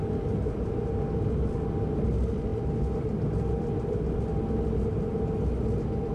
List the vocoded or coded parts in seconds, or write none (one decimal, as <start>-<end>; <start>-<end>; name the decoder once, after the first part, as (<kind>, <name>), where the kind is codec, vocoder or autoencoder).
none